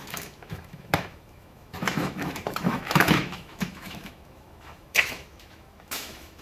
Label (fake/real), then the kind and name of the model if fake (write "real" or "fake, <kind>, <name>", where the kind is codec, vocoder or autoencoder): fake, autoencoder, DAC-VAE